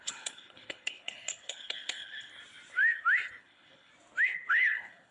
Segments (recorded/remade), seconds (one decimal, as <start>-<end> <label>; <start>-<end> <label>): 0.0-2.3 remade; 2.3-3.4 recorded; 3.4-3.9 remade; 3.9-4.5 recorded; 4.5-5.1 remade